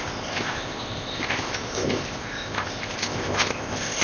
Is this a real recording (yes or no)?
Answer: no